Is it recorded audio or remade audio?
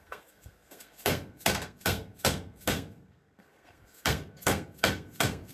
remade